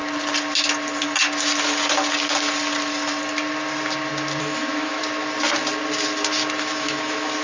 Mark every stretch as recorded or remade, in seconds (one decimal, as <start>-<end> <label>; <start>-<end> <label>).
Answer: 0.0-4.4 recorded; 4.4-5.0 remade; 5.0-6.6 recorded; 6.6-7.4 remade